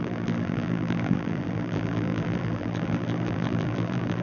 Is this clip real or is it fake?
fake